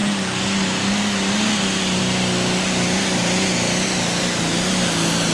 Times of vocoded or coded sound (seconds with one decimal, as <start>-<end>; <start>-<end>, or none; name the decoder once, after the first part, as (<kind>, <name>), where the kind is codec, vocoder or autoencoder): none